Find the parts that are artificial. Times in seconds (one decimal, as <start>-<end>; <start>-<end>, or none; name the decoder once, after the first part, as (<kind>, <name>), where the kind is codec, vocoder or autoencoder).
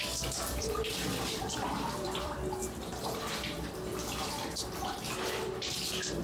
0.0-6.2 (vocoder, BigVGAN v2)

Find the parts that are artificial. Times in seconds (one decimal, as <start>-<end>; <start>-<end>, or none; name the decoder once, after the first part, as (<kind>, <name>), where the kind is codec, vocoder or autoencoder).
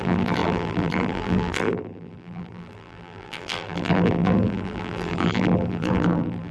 0.0-6.5 (vocoder, BigVGAN v2)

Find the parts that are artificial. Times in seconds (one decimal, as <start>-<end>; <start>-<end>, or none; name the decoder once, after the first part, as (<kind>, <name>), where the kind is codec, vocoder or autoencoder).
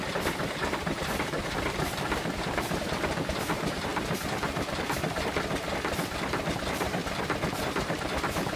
0.0-3.9 (vocoder, BigVGAN v2); 6.6-7.0; 7.7-8.6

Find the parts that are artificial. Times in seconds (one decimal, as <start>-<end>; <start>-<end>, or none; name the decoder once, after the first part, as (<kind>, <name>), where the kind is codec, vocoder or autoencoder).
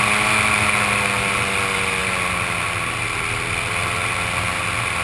none